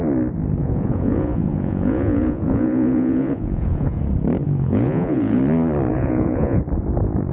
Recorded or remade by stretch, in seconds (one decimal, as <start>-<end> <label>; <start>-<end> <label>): 0.0-0.6 recorded; 0.6-4.0 remade; 4.0-4.4 recorded; 4.4-5.4 remade; 5.4-5.9 recorded; 5.9-6.6 remade; 6.6-7.3 recorded